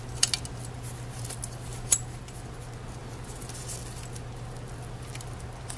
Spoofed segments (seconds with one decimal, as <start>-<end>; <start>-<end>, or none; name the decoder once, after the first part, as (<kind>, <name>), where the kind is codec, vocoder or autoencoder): 1.7-2.2 (vocoder, BigVGAN v2)